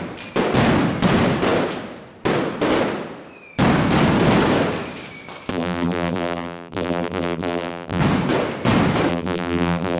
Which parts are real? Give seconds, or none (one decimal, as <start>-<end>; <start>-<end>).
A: 0.0-5.5; 8.0-9.1